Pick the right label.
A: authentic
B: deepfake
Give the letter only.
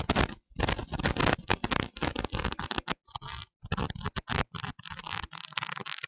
A